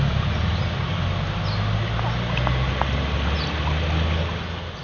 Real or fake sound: real